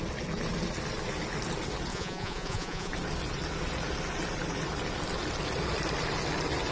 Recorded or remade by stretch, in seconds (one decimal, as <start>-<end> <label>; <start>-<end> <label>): 0.0-1.9 recorded; 1.9-2.9 remade; 2.9-6.7 recorded